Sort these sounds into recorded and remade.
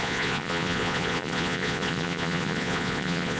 remade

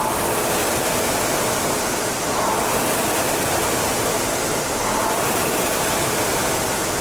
recorded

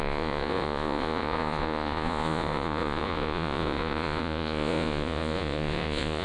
remade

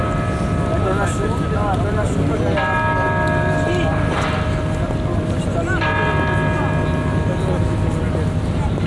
recorded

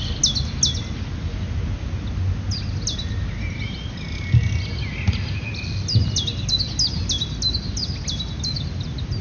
recorded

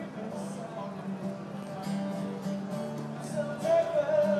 recorded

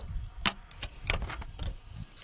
recorded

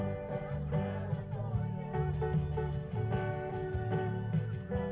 recorded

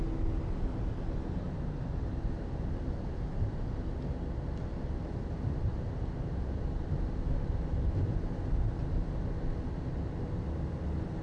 recorded